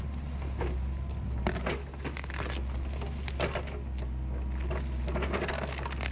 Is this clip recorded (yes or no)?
yes